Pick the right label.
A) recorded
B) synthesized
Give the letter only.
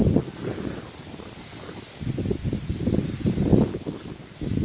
A